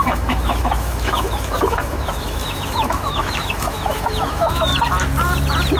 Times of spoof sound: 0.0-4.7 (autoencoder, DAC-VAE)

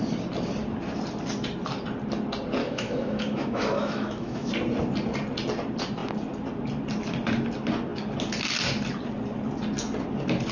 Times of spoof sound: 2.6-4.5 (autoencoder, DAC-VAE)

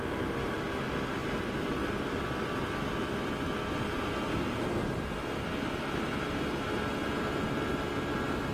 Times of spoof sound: none